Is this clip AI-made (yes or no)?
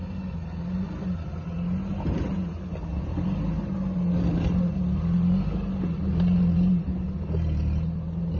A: no